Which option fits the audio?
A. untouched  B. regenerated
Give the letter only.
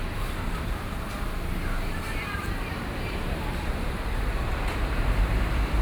B